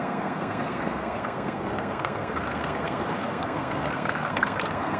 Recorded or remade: remade